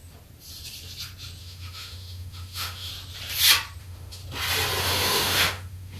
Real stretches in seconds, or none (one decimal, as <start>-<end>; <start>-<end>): 0.0-1.4; 2.9-3.8; 4.2-4.8